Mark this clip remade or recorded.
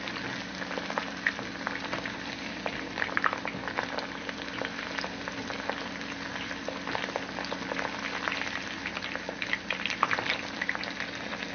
recorded